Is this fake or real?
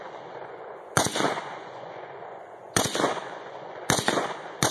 fake